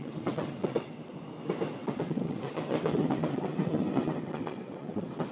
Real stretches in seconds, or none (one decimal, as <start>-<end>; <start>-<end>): 1.1-1.8